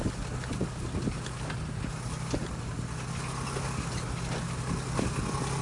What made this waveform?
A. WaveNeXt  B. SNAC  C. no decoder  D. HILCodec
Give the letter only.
C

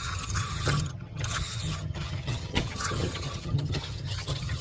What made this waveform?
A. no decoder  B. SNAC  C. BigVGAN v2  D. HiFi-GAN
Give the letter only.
D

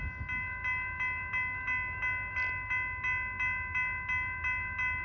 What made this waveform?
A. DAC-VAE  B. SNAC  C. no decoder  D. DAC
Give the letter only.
C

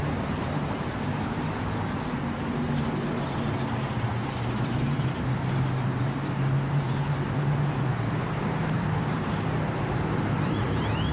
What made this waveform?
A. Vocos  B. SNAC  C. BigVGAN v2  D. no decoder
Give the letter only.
C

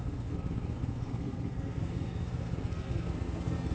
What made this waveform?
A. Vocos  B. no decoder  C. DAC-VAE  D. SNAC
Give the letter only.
D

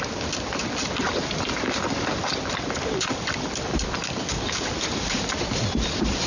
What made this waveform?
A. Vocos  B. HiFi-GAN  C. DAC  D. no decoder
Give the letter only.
D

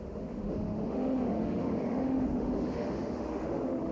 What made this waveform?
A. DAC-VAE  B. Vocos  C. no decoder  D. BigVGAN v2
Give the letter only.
A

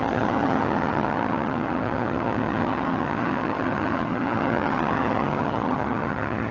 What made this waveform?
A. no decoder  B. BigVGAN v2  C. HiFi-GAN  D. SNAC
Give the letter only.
C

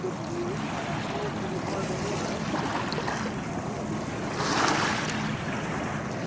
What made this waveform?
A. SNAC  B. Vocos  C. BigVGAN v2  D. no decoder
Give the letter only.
D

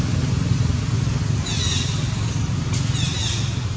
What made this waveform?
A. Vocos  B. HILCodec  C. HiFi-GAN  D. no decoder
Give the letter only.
D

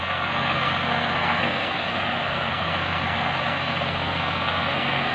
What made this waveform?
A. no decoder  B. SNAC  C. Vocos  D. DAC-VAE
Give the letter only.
B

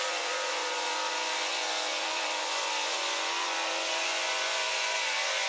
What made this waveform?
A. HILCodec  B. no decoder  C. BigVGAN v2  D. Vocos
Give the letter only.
D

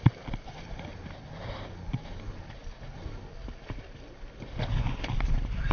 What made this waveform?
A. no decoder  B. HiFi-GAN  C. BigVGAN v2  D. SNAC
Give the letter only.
A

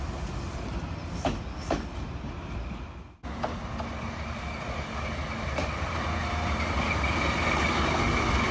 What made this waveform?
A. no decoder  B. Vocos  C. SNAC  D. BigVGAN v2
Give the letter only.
A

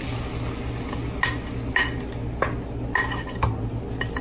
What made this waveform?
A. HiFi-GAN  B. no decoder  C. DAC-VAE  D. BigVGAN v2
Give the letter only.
B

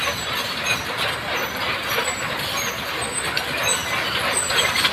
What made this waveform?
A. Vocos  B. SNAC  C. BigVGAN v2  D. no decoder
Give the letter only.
D